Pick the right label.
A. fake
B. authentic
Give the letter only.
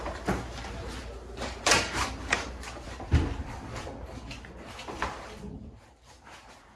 A